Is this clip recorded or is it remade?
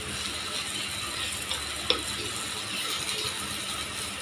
recorded